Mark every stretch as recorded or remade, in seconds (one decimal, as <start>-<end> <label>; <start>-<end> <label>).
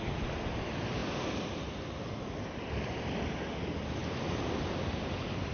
0.0-1.0 recorded; 1.0-3.1 remade; 3.1-4.0 recorded; 4.0-4.6 remade; 4.6-5.5 recorded